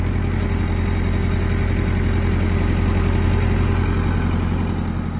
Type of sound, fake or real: real